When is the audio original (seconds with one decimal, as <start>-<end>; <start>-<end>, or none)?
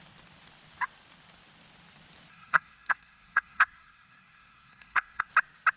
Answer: 0.0-2.3; 5.3-5.8